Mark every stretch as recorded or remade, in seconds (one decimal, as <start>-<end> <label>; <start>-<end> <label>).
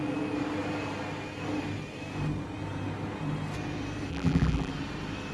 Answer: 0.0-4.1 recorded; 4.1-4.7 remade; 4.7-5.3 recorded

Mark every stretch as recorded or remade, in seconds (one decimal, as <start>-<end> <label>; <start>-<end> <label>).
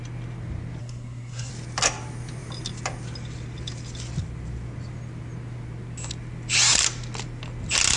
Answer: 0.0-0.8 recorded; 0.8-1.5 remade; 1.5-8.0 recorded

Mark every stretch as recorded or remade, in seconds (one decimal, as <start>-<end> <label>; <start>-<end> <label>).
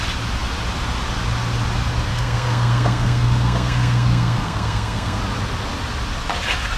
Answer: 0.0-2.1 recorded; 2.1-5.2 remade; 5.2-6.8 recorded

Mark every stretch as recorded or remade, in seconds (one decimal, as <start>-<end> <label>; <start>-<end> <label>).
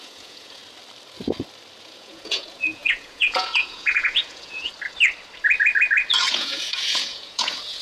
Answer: 0.0-0.6 remade; 0.6-1.8 recorded; 1.8-4.7 remade; 4.7-6.3 recorded; 6.3-7.8 remade